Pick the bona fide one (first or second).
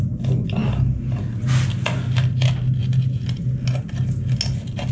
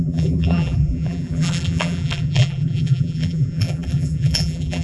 first